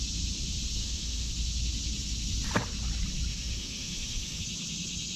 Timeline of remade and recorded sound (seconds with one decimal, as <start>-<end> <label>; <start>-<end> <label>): 0.0-0.8 recorded; 0.8-1.3 remade; 1.3-3.3 recorded; 3.3-4.4 remade; 4.4-5.2 recorded